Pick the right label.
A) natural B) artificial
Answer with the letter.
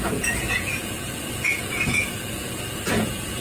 B